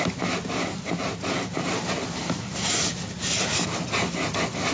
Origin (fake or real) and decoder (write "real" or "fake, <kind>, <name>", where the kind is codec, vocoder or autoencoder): real